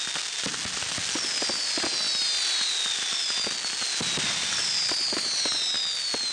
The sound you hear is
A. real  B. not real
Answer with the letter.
A